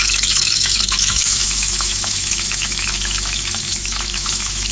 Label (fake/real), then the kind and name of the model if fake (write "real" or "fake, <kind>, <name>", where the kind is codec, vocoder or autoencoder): fake, autoencoder, DAC-VAE